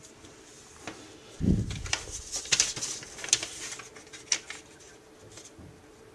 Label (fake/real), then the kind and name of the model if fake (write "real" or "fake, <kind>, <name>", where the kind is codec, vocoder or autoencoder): real